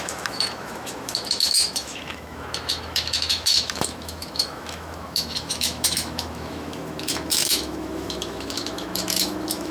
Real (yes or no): no